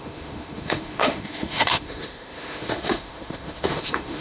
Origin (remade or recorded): remade